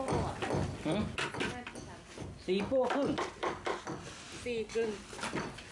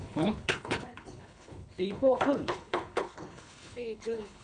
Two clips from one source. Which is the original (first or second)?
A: first